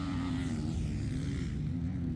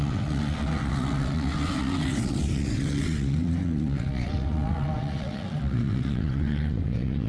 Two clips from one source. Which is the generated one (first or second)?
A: second